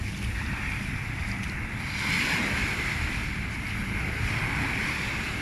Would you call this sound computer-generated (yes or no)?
no